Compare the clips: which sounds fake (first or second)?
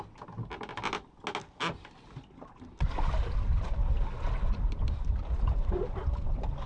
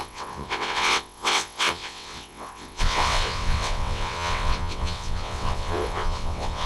second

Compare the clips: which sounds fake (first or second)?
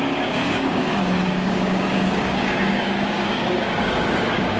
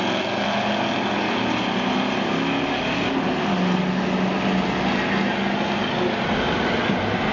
first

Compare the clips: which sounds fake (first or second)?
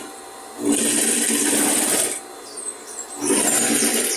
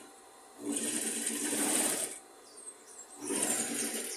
second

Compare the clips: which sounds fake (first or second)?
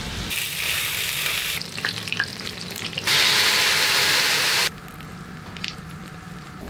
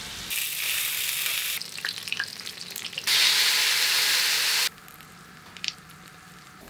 first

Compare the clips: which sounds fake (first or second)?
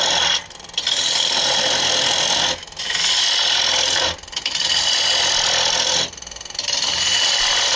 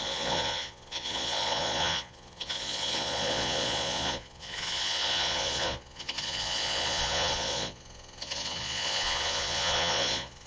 second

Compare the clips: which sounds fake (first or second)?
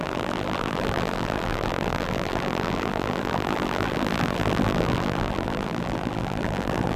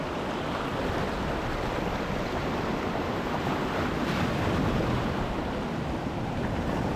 first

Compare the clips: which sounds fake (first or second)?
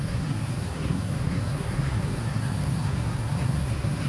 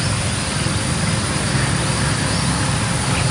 first